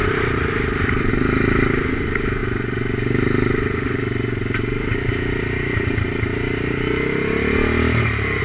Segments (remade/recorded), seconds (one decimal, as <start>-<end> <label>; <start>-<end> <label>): 0.0-1.1 remade; 1.1-2.4 recorded; 2.4-6.9 remade; 6.9-8.4 recorded